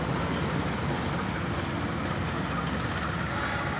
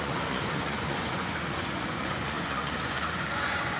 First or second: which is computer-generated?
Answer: second